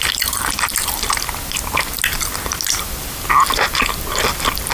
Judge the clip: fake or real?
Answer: real